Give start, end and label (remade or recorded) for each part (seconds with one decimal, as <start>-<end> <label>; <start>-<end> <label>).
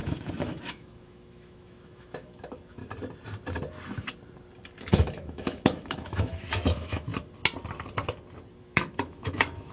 0.0-2.8 remade; 2.8-4.8 recorded; 4.8-7.1 remade; 7.1-8.6 recorded; 8.6-9.7 remade